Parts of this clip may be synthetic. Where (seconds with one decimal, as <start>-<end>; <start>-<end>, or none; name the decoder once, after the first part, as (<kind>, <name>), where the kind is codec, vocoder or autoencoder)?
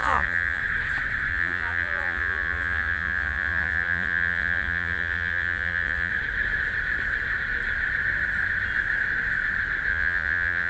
0.0-0.6 (vocoder, Vocos); 1.3-6.1; 9.9-10.7